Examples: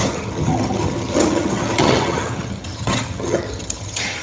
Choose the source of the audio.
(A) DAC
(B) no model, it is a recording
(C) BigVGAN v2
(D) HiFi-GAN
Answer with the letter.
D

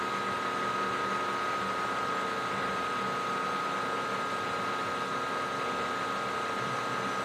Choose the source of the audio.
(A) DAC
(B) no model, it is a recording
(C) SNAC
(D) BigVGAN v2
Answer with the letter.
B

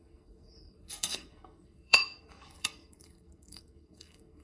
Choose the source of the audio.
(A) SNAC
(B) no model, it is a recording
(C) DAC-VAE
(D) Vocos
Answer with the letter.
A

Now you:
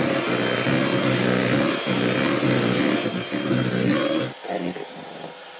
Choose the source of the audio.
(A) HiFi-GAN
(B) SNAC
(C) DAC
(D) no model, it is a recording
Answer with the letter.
D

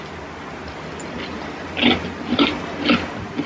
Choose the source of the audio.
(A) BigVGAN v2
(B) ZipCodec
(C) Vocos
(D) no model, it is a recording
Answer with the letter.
D